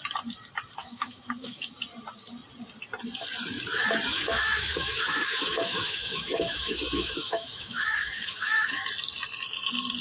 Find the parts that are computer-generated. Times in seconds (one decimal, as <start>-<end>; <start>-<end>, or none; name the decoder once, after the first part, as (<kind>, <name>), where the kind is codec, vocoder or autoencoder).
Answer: 0.8-1.7 (autoencoder, DAC-VAE); 4.1-8.8